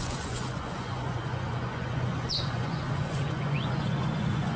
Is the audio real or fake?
fake